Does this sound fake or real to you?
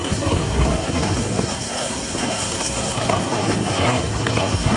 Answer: fake